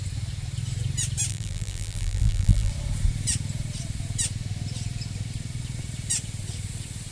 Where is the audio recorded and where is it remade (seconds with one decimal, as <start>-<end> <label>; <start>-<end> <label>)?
0.0-1.3 recorded; 1.3-2.7 remade; 2.7-7.1 recorded